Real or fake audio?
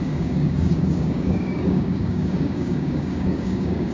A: fake